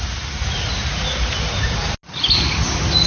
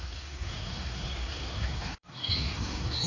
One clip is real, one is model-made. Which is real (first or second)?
first